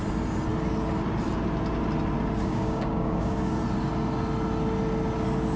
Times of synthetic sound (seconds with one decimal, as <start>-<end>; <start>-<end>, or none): 2.4-3.5